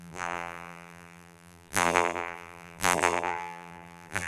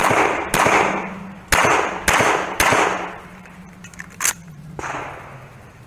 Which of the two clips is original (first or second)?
second